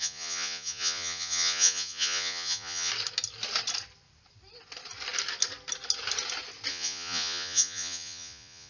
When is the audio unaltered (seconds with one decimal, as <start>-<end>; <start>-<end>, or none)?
2.9-6.7